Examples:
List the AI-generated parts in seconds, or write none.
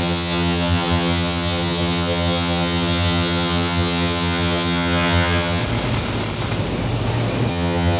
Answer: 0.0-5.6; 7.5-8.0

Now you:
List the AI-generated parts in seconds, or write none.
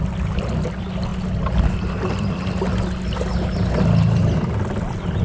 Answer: none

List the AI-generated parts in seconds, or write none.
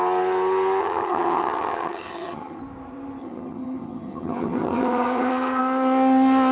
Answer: 0.8-2.6; 3.2-5.6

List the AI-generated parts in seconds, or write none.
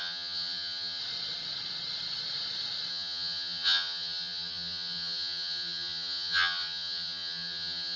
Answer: 0.0-1.0; 2.9-8.0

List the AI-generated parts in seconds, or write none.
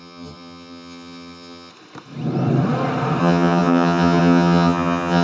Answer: 0.0-1.7; 3.2-5.2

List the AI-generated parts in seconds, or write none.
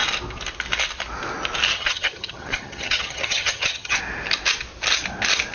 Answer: 1.7-4.0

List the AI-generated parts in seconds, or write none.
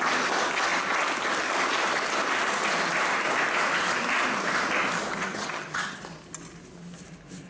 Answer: 5.2-6.0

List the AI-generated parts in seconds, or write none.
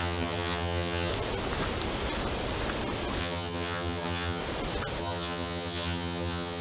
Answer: 0.0-1.1; 3.2-4.4; 5.0-6.6